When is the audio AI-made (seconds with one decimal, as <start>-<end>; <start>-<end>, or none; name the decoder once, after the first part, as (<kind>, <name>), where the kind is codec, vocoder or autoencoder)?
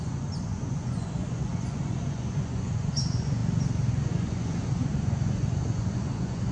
0.0-3.4 (vocoder, Vocos); 3.9-6.5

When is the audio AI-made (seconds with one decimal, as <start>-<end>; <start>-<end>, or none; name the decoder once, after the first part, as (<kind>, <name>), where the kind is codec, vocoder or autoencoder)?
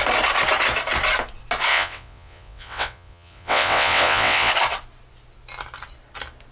1.7-4.5 (vocoder, WaveNeXt)